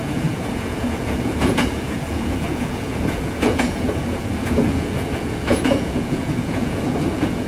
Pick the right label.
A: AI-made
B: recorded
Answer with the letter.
A